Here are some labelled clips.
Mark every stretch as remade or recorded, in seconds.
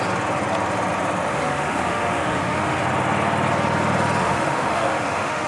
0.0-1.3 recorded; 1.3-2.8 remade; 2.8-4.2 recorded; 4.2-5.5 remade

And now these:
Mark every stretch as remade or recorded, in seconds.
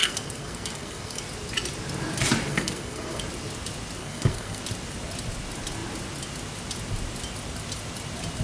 0.0-1.2 remade; 1.2-2.5 recorded; 2.5-3.2 remade; 3.2-4.0 recorded; 4.0-4.6 remade; 4.6-8.4 recorded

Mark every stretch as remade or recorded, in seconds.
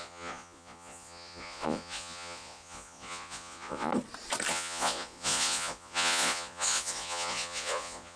0.0-3.9 remade; 3.9-4.5 recorded; 4.5-8.2 remade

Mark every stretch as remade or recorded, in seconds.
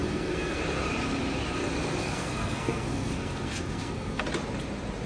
0.0-0.6 remade; 0.6-2.0 recorded; 2.0-4.2 remade; 4.2-5.1 recorded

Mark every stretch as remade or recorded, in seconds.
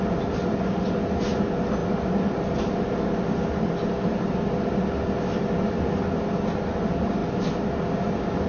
0.0-8.5 recorded